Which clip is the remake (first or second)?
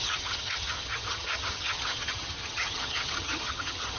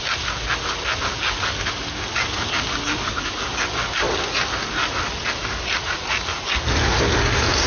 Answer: first